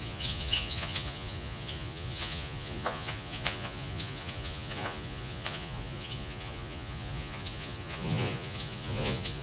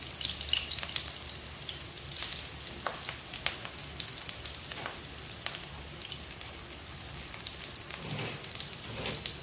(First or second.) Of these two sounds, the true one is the second